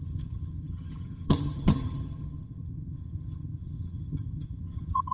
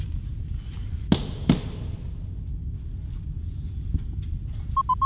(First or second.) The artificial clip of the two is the first